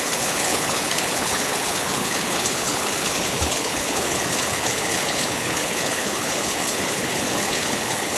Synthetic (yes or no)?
yes